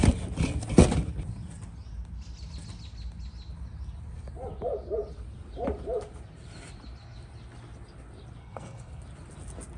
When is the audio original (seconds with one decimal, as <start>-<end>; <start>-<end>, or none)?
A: 0.0-8.4; 9.0-9.8

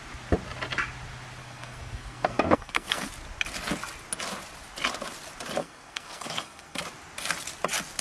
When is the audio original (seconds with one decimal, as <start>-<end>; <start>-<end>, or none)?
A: 0.0-1.4; 3.1-5.6; 6.8-8.0

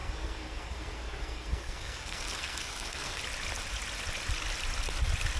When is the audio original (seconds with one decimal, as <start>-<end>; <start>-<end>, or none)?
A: 3.2-5.4

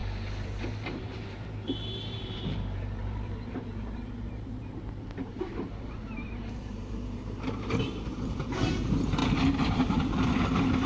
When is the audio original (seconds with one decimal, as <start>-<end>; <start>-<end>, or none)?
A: none

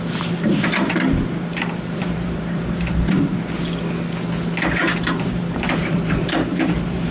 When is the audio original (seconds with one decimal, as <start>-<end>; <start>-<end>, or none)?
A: 3.3-5.3

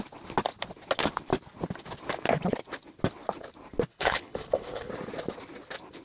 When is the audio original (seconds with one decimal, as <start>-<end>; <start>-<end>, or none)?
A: 0.0-3.9; 4.9-6.0

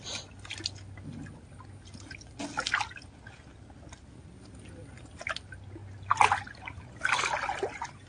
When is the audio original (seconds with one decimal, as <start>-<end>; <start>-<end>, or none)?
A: 0.0-8.1